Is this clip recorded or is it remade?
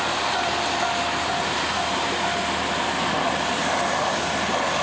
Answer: recorded